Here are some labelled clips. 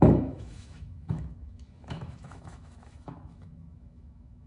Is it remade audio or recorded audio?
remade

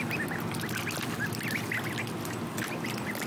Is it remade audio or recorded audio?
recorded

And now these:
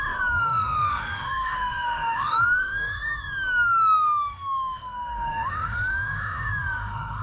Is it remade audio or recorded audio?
remade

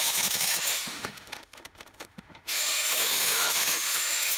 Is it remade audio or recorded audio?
remade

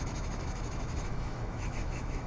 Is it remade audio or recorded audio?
remade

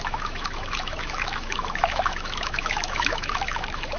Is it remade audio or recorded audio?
remade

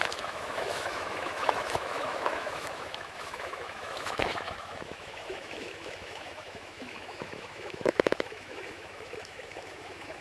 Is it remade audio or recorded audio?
remade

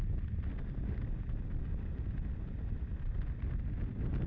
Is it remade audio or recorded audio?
recorded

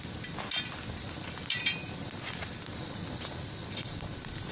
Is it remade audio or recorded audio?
recorded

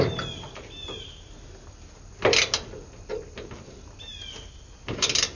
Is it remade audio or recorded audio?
recorded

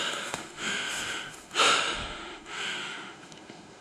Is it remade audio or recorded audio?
remade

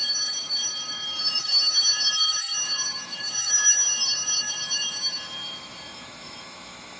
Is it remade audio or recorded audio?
remade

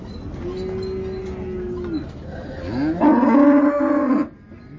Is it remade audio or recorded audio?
recorded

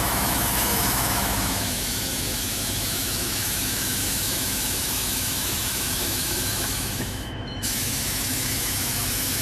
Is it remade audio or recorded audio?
remade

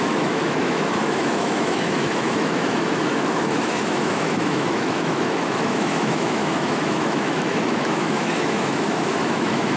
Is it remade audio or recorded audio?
remade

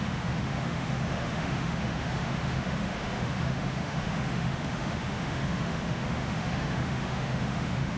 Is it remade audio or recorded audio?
remade